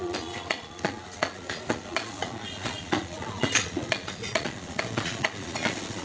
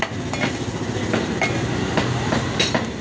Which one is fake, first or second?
first